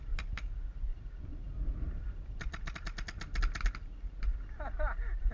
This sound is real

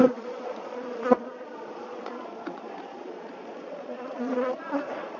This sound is fake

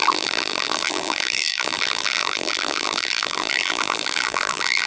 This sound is fake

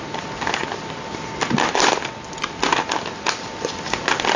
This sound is real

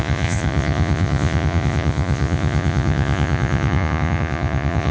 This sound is fake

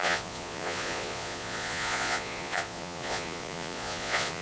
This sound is fake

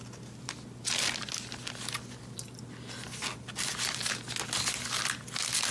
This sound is real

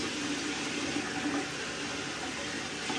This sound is real